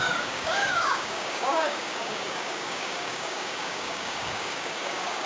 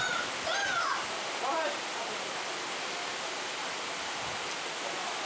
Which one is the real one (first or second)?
second